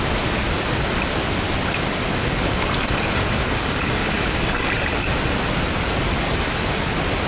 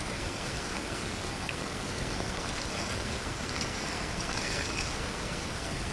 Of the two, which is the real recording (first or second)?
first